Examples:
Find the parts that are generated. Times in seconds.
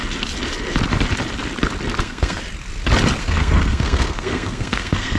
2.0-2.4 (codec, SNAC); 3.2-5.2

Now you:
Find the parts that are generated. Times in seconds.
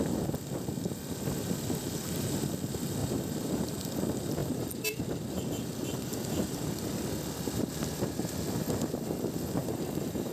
3.0-3.8 (vocoder, BigVGAN v2); 4.4-6.6; 9.6-10.3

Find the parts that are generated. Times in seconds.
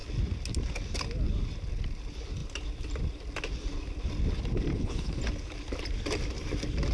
4.7-5.2 (codec, HILCodec)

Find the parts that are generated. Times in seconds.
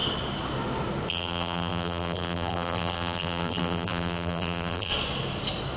1.1-4.9 (vocoder, BigVGAN v2)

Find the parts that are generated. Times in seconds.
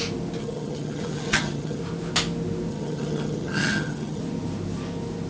0.4-1.8 (vocoder, HiFi-GAN); 2.7-4.2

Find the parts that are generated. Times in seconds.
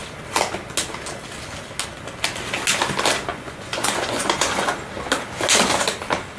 3.3-4.7 (vocoder, Vocos)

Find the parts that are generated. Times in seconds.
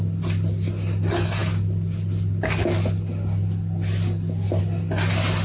none